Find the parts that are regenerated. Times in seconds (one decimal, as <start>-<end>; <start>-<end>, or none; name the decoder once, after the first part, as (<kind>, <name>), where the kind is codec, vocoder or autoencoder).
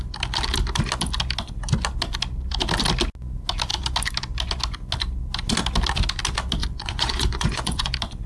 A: 6.6-7.9 (vocoder, Vocos)